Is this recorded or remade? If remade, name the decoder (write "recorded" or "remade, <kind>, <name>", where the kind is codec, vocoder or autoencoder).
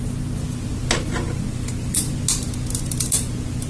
recorded